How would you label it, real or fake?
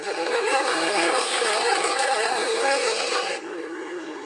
fake